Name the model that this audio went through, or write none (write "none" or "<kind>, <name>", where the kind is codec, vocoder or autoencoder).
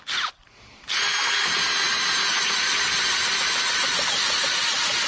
none